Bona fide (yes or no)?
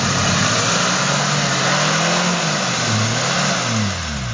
yes